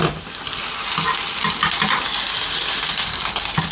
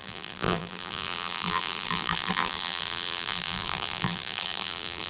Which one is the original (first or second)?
first